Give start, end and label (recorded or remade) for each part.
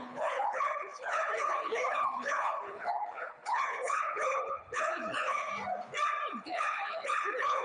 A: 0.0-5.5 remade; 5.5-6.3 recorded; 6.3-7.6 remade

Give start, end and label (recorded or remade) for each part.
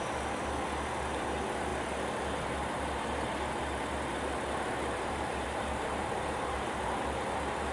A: 0.0-4.8 recorded; 4.8-7.0 remade; 7.0-7.7 recorded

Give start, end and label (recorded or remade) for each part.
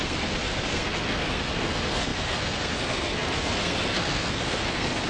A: 0.0-5.1 remade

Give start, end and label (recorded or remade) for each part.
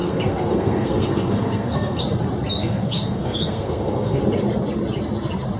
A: 0.0-2.0 remade; 2.0-2.6 recorded; 2.6-4.2 remade; 4.2-5.6 recorded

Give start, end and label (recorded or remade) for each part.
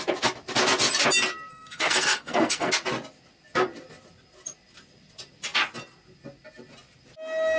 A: 0.0-1.5 recorded; 1.5-2.7 remade; 2.7-7.6 recorded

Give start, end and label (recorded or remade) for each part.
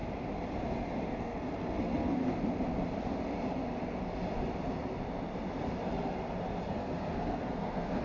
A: 0.0-1.1 recorded; 1.1-2.2 remade; 2.2-6.7 recorded; 6.7-8.0 remade